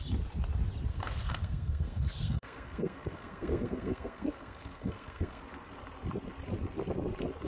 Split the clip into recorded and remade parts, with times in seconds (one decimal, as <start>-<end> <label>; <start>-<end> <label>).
0.0-0.9 recorded; 0.9-5.4 remade; 5.4-7.5 recorded